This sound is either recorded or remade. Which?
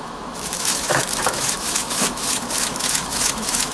remade